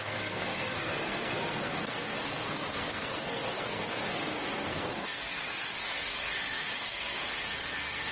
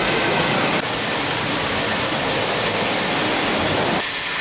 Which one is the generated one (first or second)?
first